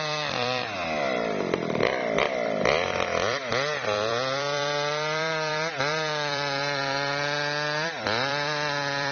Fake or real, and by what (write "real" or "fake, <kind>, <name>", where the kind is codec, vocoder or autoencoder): fake, vocoder, BigVGAN v2